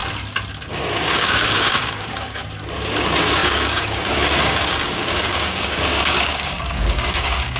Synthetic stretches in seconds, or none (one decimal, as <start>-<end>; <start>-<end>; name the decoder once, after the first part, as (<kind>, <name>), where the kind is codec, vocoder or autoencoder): 0.7-2.4 (codec, DAC); 3.0-7.6